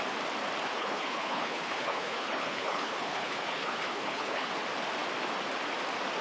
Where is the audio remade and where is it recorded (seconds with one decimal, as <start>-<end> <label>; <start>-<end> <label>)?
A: 0.0-0.8 recorded; 0.8-4.5 remade; 4.5-6.2 recorded